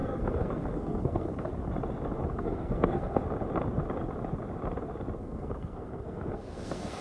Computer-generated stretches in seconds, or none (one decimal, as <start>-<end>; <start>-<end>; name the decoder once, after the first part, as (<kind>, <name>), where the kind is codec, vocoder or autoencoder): 0.0-1.5 (codec, SNAC); 2.3-3.2; 5.2-7.0